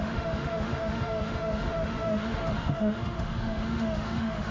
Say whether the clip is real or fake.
fake